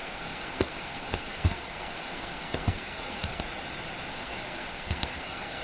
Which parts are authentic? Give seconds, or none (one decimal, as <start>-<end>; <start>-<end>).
3.4-4.1